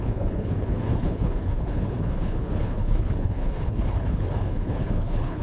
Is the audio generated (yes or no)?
yes